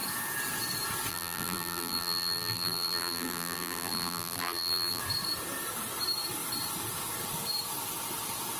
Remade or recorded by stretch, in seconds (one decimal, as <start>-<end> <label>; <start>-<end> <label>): 0.0-1.1 recorded; 1.1-5.0 remade; 5.0-8.6 recorded

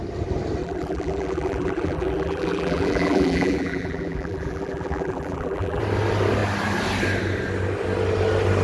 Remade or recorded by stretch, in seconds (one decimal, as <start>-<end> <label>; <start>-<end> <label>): 0.0-0.6 recorded; 0.6-5.8 remade; 5.8-8.6 recorded

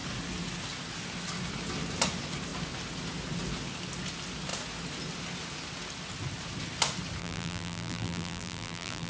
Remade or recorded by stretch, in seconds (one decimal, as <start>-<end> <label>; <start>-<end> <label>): 0.0-7.2 recorded; 7.2-9.1 remade